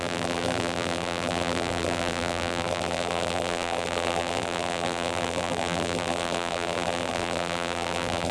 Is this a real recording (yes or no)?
no